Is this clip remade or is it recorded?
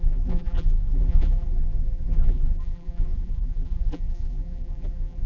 remade